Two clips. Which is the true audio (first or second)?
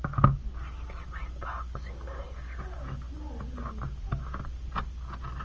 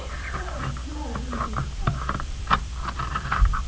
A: first